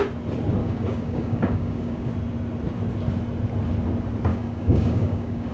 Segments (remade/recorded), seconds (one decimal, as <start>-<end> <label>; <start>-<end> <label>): 0.0-0.6 recorded; 0.6-2.1 remade; 2.1-4.3 recorded; 4.3-5.5 remade